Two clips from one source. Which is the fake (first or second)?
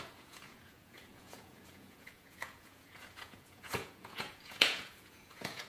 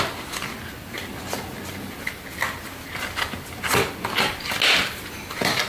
first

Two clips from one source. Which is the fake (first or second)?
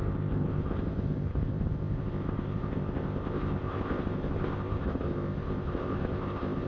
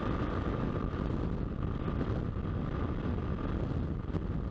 first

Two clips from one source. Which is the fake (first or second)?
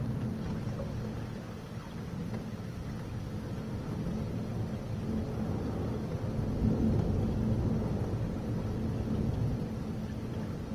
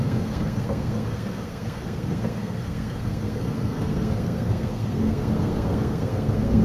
second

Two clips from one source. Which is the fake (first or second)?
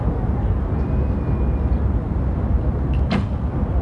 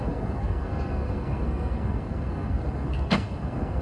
second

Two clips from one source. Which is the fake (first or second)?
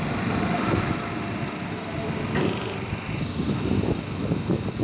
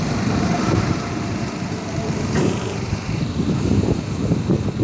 second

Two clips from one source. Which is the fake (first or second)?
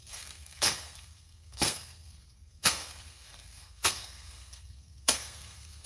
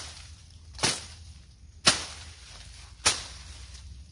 first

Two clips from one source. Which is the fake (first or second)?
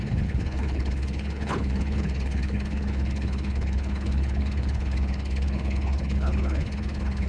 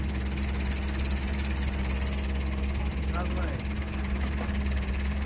first